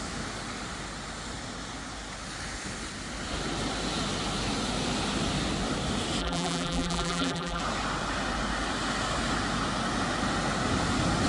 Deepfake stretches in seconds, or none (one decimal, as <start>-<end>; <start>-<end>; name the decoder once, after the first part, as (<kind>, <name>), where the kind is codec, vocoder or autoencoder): 6.2-7.6 (vocoder, BigVGAN v2)